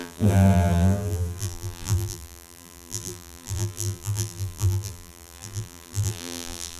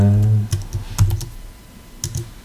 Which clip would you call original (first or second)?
second